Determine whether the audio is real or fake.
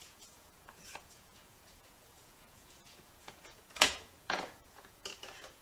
fake